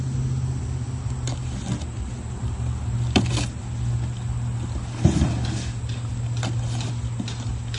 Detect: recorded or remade recorded